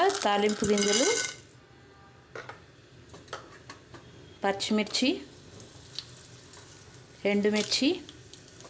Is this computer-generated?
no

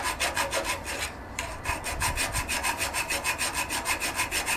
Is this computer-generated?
yes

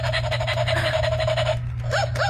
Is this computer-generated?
no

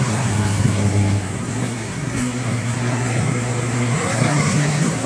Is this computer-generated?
yes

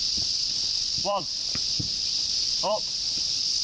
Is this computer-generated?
yes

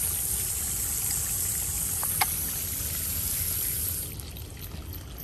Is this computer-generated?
no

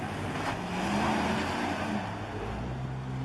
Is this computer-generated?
no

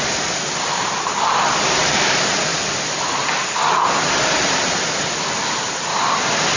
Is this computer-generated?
no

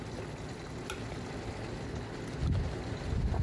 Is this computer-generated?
no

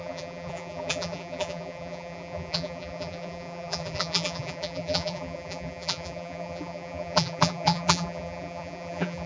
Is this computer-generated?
yes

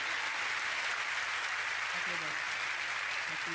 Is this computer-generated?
no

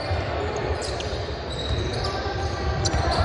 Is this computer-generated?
no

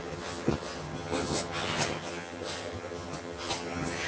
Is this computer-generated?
yes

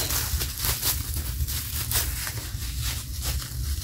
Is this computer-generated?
no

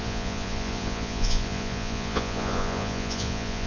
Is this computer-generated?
yes